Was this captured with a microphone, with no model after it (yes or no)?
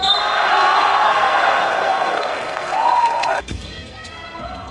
no